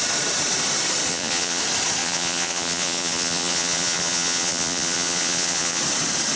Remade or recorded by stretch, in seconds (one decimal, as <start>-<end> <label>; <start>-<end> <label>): 0.0-1.1 recorded; 1.1-1.6 remade; 1.6-2.0 recorded; 2.0-5.8 remade; 5.8-6.4 recorded